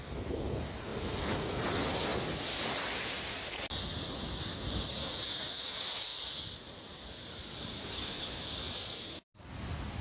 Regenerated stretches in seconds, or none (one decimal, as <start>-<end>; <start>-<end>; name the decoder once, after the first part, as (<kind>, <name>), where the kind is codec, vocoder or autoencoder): 7.8-8.4 (codec, HILCodec)